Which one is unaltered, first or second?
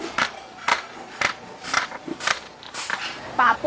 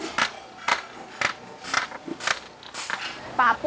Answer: second